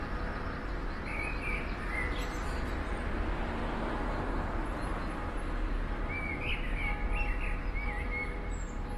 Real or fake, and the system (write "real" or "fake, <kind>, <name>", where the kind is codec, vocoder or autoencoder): real